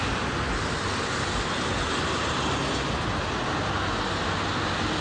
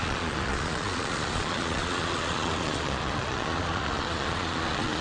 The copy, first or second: second